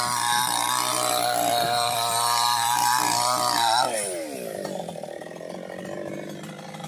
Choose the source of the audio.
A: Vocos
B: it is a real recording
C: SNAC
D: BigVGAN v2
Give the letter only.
D